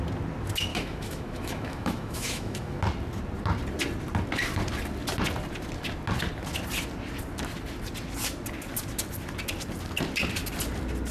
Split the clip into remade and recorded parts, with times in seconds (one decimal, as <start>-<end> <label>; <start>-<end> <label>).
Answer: 0.0-0.7 recorded; 0.7-2.8 remade; 2.8-11.1 recorded